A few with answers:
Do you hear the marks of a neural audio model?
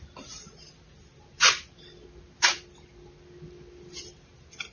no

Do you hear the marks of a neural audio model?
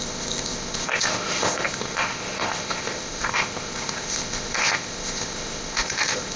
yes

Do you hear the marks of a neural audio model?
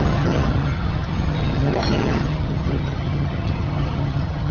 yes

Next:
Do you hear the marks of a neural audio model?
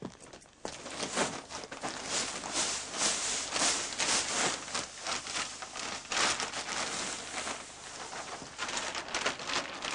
no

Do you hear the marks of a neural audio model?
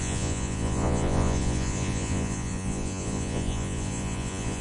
yes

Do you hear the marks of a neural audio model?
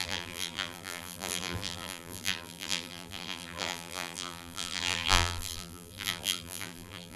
yes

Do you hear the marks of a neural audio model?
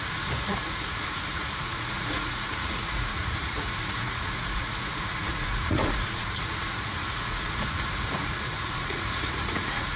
yes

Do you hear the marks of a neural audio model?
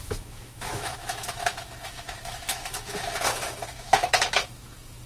yes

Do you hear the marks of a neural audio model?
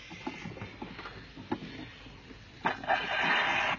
no